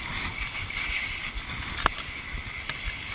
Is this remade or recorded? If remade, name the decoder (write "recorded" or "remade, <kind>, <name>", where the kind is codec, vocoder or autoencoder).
recorded